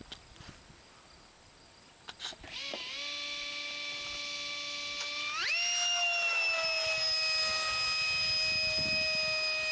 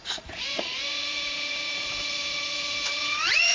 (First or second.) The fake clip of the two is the second